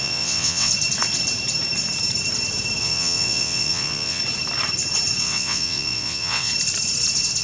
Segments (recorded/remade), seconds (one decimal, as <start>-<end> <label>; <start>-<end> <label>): 0.0-0.7 remade; 0.7-2.8 recorded; 2.8-4.2 remade; 4.2-5.2 recorded; 5.2-6.5 remade; 6.5-7.4 recorded